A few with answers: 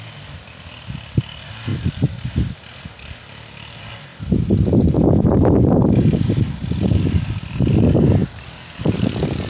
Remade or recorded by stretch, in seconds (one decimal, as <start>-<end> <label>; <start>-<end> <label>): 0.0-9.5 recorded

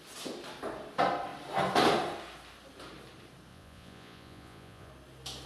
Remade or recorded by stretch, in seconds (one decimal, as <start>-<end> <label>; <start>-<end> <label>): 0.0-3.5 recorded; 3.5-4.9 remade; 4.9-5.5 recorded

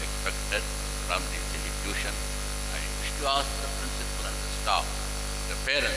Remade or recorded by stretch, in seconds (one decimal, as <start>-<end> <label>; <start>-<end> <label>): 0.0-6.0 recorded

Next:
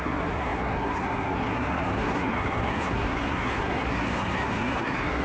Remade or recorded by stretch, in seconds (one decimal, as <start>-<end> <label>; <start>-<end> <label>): 0.0-5.2 remade

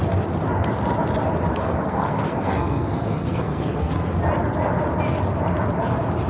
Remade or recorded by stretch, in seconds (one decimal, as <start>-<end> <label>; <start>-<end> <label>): 0.0-1.5 recorded; 1.5-3.9 remade; 3.9-6.3 recorded

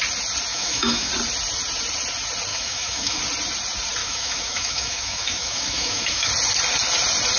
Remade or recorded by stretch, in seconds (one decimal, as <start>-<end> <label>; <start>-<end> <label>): 0.0-0.5 recorded; 0.5-1.1 remade; 1.1-2.5 recorded; 2.5-3.2 remade; 3.2-4.0 recorded; 4.0-6.3 remade; 6.3-7.4 recorded

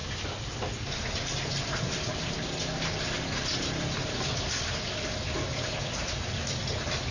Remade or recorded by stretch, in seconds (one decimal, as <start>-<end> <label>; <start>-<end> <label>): 0.0-7.1 recorded